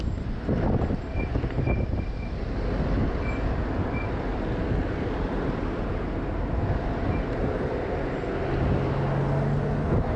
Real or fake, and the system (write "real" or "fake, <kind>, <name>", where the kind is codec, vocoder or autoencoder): real